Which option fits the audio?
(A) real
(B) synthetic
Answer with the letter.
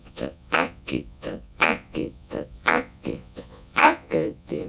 B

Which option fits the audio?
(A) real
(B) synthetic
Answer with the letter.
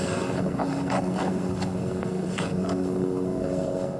B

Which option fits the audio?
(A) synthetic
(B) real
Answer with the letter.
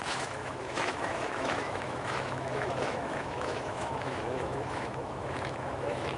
A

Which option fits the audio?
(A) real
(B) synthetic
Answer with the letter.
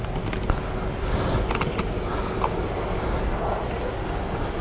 A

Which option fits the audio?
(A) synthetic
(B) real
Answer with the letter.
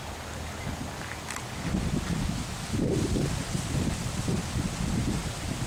B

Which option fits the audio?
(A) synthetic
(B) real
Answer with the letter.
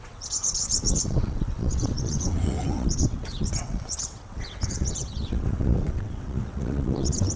A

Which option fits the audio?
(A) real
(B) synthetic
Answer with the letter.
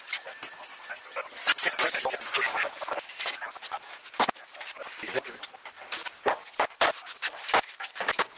A